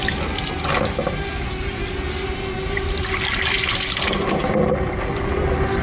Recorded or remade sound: recorded